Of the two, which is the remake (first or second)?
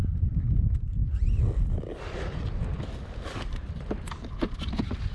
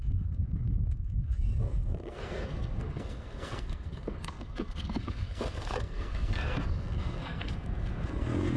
second